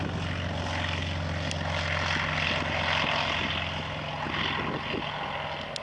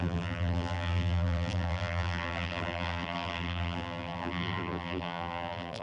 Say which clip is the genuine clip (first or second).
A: first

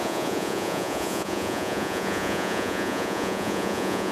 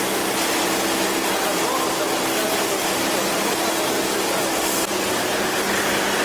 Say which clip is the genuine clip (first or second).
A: second